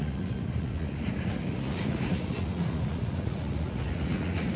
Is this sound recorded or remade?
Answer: remade